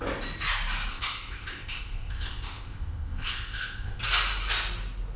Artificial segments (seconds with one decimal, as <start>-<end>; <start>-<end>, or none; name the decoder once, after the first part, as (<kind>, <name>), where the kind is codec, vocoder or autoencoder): 0.9-4.0 (codec, ZipCodec)